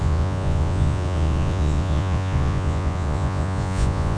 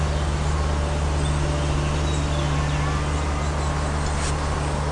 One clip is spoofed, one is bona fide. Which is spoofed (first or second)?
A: first